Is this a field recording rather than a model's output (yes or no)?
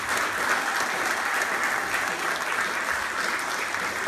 yes